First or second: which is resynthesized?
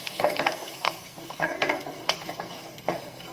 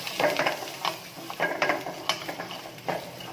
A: first